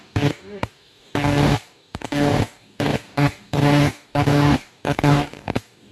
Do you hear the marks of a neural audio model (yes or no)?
yes